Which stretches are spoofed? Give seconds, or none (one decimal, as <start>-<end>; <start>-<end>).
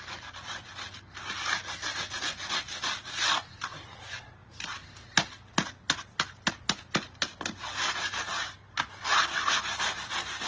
none